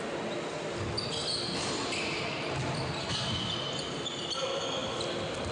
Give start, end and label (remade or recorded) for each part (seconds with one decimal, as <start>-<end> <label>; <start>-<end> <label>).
0.0-3.0 recorded; 3.0-3.5 remade; 3.5-5.5 recorded